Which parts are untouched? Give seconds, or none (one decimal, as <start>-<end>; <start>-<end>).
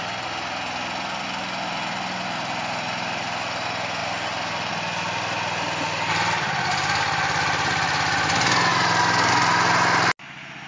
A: 0.0-4.0; 4.7-8.7; 9.3-10.7